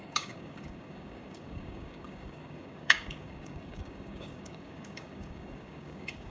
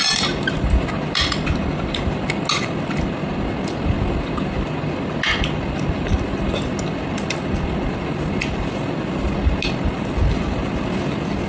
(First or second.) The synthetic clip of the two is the first